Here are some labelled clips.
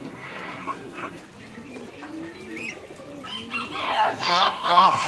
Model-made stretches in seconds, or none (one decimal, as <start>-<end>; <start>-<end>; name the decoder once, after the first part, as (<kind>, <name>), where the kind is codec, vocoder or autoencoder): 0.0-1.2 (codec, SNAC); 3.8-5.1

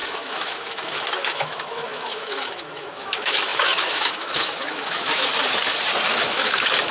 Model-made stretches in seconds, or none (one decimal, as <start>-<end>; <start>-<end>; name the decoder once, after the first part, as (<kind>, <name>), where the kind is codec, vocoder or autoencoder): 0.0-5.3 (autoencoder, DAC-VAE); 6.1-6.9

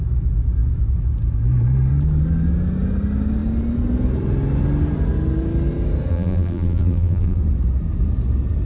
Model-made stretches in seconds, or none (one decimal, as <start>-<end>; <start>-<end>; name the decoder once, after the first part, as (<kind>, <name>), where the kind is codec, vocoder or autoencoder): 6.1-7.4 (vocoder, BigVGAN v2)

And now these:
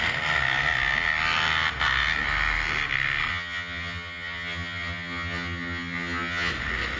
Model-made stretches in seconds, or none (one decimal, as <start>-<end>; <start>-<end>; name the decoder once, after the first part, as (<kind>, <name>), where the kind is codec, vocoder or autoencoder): 3.3-6.5 (vocoder, HiFi-GAN)

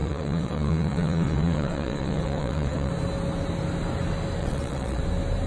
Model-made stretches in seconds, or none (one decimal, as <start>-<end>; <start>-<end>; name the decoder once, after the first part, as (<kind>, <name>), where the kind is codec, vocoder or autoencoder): 0.0-2.9 (vocoder, WaveNeXt); 4.4-5.0

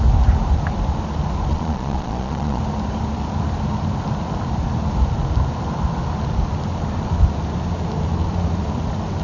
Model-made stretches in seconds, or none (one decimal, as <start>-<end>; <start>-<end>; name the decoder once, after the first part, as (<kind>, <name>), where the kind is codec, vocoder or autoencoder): 1.5-2.6 (vocoder, Vocos)